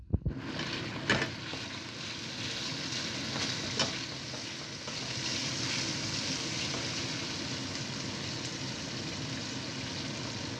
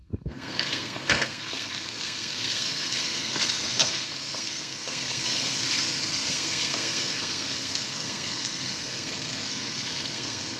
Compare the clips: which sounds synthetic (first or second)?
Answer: second